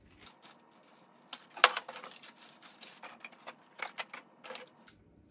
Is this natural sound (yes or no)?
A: yes